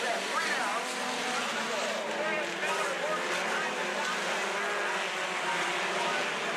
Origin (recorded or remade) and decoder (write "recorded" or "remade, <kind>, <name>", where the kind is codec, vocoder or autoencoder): recorded